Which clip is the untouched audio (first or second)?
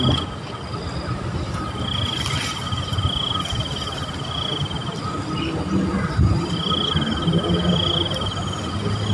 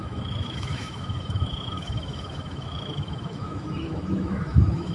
first